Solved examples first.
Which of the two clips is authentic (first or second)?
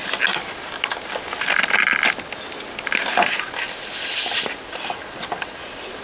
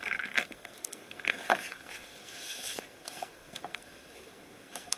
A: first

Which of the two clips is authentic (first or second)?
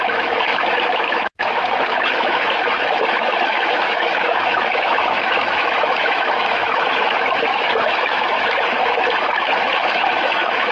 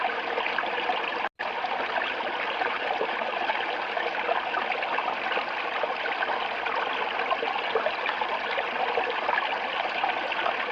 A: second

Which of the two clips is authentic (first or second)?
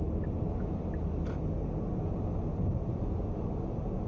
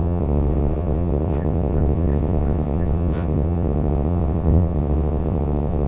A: first